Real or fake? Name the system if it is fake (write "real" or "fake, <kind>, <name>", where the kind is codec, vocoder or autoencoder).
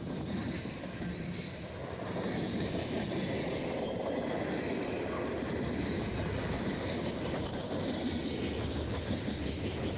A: real